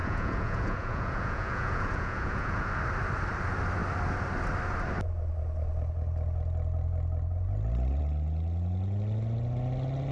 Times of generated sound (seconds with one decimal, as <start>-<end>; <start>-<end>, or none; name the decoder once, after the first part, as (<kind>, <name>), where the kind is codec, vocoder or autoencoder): 0.0-2.7 (vocoder, Vocos)